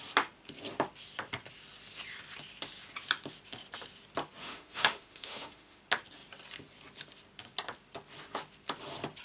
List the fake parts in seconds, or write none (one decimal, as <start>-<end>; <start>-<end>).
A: 4.4-5.8